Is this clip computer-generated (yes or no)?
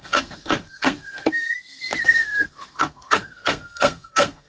yes